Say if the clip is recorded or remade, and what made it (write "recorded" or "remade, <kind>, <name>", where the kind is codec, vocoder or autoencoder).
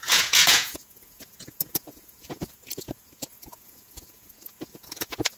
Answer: remade, vocoder, Vocos